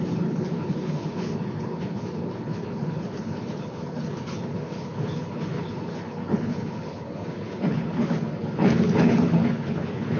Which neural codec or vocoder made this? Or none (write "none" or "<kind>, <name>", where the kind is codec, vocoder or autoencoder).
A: codec, HILCodec